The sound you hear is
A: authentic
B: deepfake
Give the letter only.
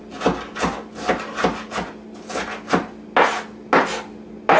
A